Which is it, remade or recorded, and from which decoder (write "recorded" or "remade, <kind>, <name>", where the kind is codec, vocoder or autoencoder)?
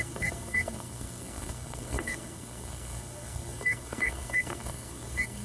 remade, codec, SNAC